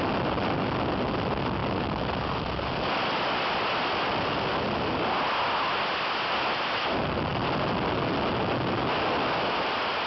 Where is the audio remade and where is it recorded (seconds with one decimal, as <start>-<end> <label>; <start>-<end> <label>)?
0.0-10.1 recorded